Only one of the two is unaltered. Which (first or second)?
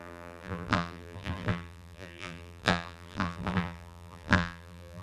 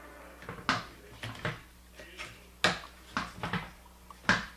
second